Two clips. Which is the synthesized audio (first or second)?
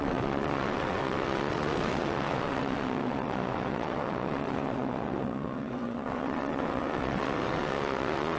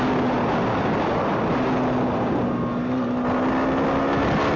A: first